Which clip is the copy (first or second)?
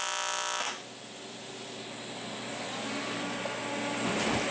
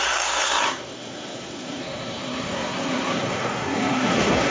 second